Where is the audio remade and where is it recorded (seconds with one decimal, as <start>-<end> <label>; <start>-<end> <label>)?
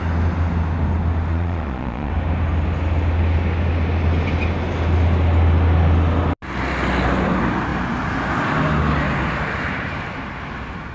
0.0-1.3 recorded; 1.3-2.1 remade; 2.1-10.9 recorded